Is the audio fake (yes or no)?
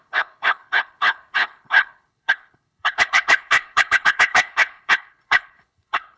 yes